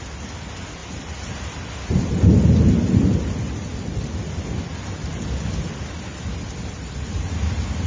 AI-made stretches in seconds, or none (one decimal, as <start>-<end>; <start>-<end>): none